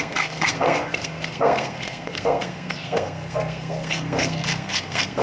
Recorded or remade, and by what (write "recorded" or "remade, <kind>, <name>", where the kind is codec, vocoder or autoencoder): remade, codec, SNAC